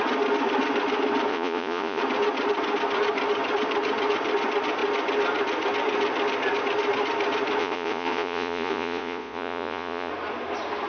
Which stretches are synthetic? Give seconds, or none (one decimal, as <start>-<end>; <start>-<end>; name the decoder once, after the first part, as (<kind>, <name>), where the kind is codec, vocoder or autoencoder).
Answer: 1.3-2.0 (vocoder, Vocos); 7.6-10.1

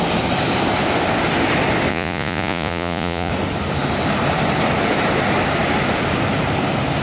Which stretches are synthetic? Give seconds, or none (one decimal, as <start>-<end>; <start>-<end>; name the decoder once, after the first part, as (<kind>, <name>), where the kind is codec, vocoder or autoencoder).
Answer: 1.9-3.3 (vocoder, Vocos)